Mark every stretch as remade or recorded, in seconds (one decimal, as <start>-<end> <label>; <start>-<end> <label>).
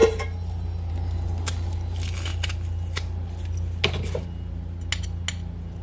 0.0-5.8 recorded